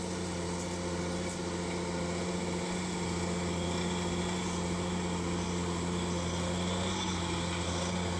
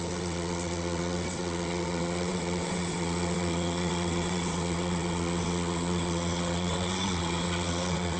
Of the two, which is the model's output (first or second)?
second